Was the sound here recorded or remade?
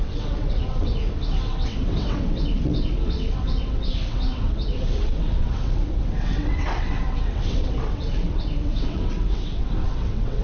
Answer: remade